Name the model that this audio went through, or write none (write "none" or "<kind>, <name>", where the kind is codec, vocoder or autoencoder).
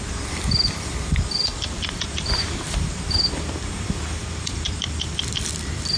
vocoder, BigVGAN v2